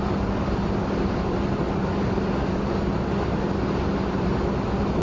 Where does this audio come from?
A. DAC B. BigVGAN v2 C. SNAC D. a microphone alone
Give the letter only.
D